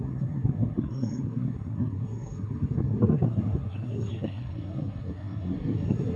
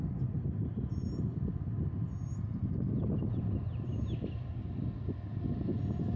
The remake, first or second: first